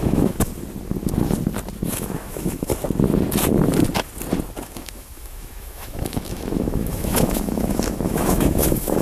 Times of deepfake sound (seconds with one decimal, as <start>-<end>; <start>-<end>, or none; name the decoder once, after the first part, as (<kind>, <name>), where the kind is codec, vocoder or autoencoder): 0.0-0.5 (autoencoder, DAC-VAE); 1.9-2.7; 4.6-9.0